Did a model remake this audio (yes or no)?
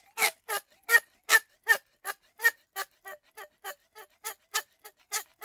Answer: no